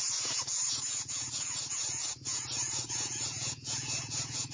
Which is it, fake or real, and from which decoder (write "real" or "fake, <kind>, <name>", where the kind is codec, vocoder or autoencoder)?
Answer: fake, vocoder, Vocos